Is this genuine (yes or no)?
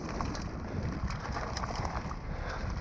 yes